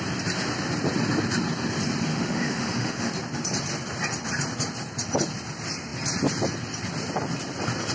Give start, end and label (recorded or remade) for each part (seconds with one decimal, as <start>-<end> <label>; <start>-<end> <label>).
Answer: 0.0-2.1 recorded; 2.1-3.1 remade; 3.1-7.9 recorded